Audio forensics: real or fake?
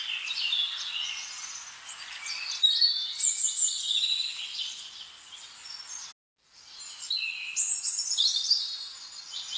real